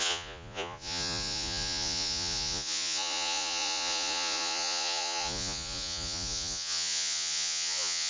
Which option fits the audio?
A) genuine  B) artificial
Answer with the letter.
B